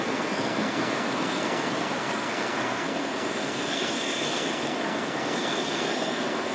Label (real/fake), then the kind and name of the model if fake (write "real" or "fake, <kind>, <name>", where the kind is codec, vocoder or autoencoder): fake, codec, SNAC